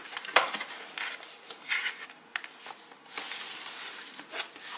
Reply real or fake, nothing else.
real